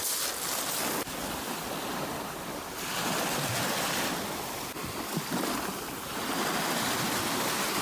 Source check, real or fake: real